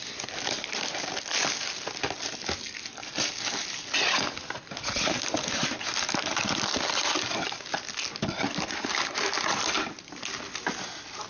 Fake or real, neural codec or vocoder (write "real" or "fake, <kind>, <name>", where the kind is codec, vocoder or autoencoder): real